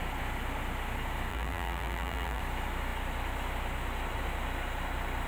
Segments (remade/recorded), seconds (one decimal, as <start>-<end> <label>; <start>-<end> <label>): 0.0-1.3 recorded; 1.3-2.4 remade; 2.4-5.3 recorded